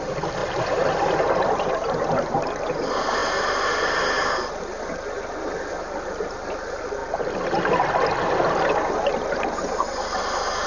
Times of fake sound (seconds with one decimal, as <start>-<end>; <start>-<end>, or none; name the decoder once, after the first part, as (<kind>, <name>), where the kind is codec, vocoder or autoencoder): none